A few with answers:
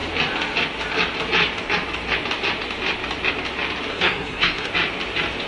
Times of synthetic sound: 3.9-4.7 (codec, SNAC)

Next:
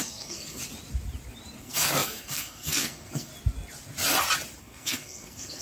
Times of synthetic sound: 0.0-0.6 (codec, SNAC); 1.6-3.3; 4.6-5.6

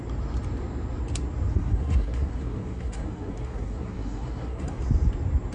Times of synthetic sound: 1.5-4.8 (codec, SNAC)

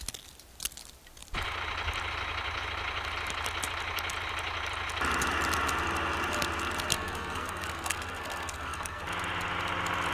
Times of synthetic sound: 6.9-9.0 (codec, SNAC)

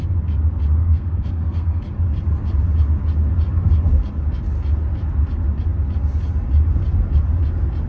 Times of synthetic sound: 0.8-1.8 (codec, SNAC)

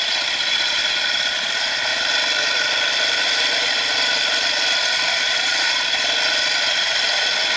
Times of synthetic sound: none

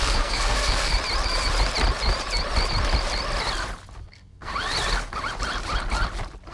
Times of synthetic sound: 0.0-0.9 (codec, SNAC); 4.1-4.5

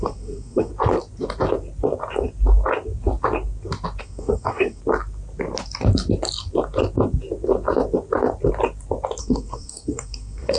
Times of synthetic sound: 0.0-0.7 (codec, SNAC); 4.0-4.8; 9.2-10.6